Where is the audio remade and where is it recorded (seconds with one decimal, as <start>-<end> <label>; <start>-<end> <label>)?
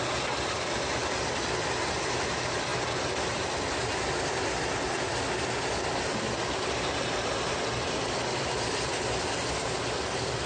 0.0-10.5 recorded